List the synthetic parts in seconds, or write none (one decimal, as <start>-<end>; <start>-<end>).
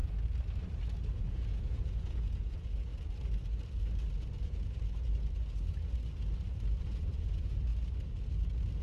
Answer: 1.2-2.9; 6.8-7.7